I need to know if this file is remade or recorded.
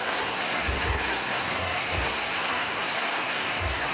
remade